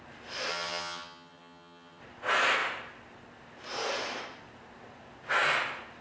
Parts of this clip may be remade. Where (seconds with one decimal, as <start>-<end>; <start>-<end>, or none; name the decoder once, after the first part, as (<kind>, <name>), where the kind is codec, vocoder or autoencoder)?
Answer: 0.5-2.0 (vocoder, HiFi-GAN)